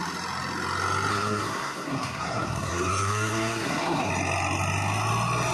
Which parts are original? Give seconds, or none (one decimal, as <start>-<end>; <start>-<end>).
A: 0.0-1.1; 4.1-5.5

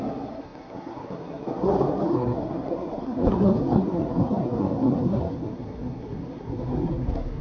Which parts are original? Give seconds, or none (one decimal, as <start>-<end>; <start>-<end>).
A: none

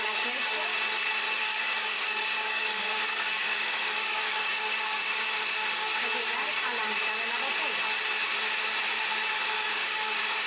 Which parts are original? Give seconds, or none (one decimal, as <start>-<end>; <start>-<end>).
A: 0.7-1.4; 5.9-9.4

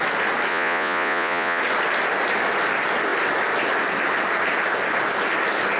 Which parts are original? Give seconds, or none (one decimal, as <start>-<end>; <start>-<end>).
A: 0.0-0.5; 1.6-5.8